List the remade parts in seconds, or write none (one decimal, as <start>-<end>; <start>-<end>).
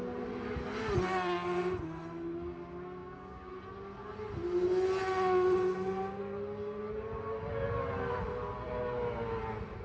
3.0-3.5